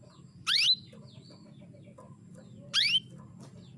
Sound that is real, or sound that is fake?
real